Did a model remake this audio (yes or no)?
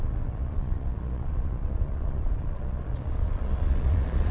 yes